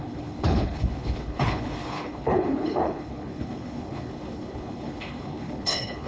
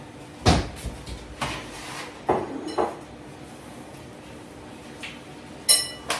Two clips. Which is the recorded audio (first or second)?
second